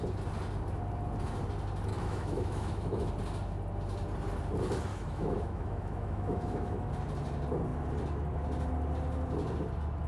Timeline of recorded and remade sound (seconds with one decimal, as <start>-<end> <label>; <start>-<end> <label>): 0.0-1.9 recorded; 1.9-3.1 remade; 3.1-4.9 recorded; 4.9-6.9 remade; 6.9-10.1 recorded